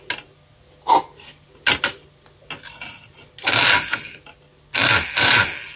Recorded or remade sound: recorded